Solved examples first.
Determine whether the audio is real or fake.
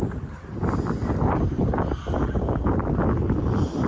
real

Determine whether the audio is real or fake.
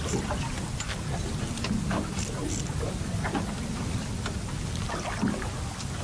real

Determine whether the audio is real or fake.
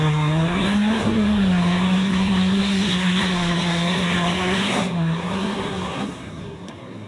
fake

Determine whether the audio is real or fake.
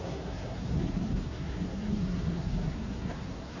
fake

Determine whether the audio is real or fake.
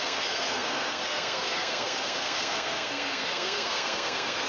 fake